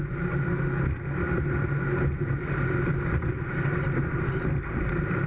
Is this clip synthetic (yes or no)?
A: no